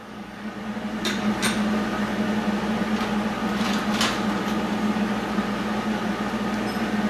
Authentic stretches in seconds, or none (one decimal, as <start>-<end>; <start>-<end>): 0.5-7.1